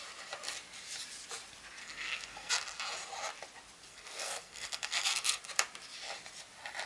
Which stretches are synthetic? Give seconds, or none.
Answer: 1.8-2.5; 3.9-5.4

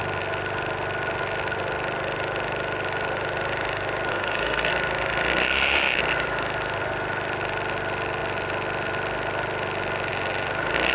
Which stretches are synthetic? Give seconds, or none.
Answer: 4.1-4.7

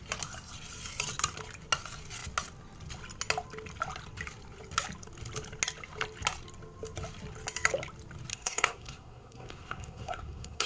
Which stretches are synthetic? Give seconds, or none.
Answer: 8.3-10.7

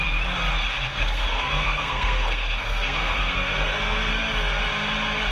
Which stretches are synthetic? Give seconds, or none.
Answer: 0.9-4.1

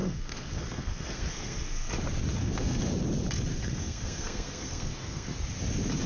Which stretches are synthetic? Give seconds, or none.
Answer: 0.0-1.9; 2.4-2.9; 3.5-5.3

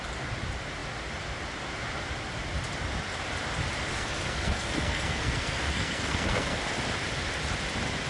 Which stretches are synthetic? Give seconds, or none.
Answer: 3.9-6.6

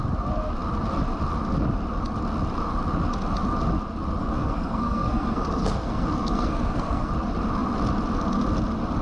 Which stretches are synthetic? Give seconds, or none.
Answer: 4.2-7.1